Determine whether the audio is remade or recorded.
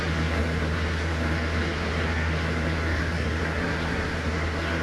remade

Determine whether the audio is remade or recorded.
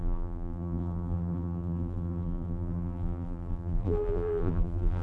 remade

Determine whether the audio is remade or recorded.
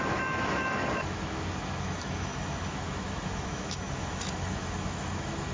remade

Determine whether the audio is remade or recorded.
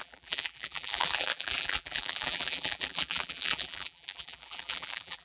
remade